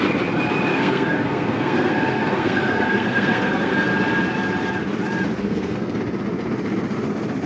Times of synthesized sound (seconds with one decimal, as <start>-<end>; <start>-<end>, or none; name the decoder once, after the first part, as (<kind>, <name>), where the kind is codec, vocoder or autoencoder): 0.7-3.9 (codec, SNAC); 5.4-6.0